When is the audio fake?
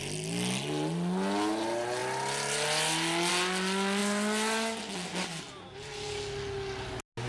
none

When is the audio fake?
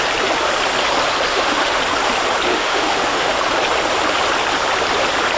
1.3-1.8; 2.5-3.4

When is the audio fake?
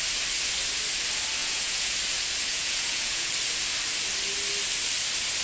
1.4-1.9; 2.5-3.3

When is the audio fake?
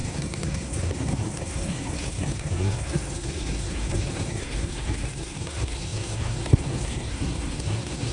0.0-8.1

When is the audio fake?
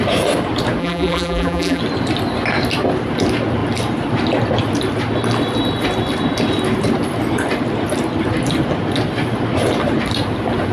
0.8-1.8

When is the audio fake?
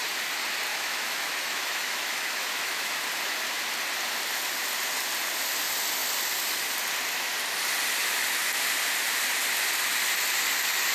0.7-2.9